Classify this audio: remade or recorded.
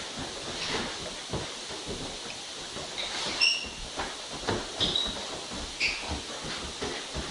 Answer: recorded